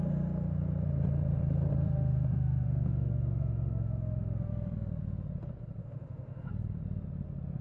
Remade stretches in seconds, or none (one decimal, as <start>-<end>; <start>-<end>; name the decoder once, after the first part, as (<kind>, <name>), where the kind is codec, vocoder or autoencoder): 1.7-4.5 (autoencoder, DAC-VAE); 5.8-6.5